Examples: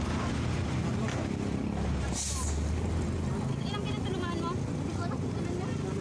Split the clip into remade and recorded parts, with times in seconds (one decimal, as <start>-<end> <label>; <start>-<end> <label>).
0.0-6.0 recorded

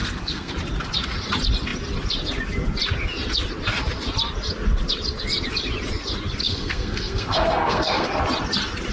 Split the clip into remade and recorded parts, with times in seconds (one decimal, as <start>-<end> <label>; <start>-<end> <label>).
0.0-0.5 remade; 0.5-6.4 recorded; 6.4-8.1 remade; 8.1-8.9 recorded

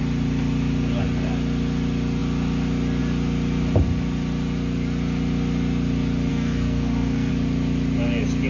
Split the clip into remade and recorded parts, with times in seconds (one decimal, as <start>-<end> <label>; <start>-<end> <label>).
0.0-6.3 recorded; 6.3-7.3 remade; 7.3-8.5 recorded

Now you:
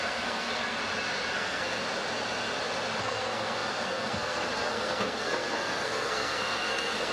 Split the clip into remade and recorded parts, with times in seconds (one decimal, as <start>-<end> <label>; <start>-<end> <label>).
0.0-0.8 remade; 0.8-1.3 recorded; 1.3-1.8 remade; 1.8-3.0 recorded; 3.0-7.1 remade

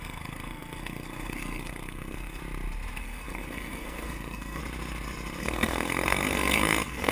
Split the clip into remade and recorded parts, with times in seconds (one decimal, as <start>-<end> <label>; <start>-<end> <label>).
0.0-2.4 remade; 2.4-3.0 recorded; 3.0-4.6 remade; 4.6-5.4 recorded; 5.4-7.1 remade

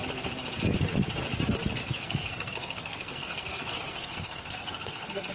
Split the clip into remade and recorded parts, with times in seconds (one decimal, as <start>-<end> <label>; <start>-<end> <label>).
0.0-1.8 recorded; 1.8-5.3 remade

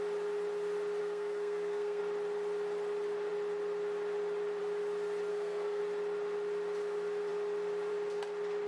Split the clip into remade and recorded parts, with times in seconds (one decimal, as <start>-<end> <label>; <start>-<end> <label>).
0.0-1.0 recorded; 1.0-2.0 remade; 2.0-5.3 recorded; 5.3-5.8 remade; 5.8-8.7 recorded

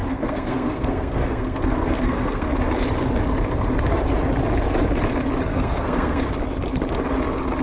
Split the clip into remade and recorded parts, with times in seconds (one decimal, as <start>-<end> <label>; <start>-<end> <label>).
0.0-2.5 remade; 2.5-5.5 recorded; 5.5-6.3 remade; 6.3-7.6 recorded